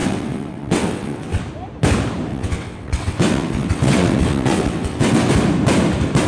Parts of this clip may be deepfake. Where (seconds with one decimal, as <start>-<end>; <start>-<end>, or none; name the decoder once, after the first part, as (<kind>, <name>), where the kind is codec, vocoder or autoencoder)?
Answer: 0.0-1.4 (vocoder, WaveNeXt); 2.3-5.3